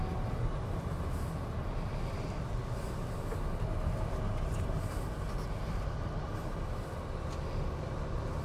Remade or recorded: recorded